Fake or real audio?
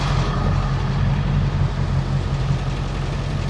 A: real